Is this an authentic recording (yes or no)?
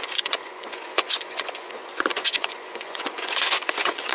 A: no